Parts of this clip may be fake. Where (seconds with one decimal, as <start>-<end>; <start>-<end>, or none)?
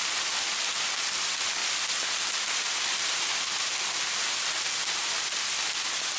1.6-3.3